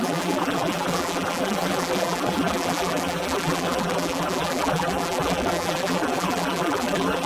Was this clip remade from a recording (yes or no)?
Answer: yes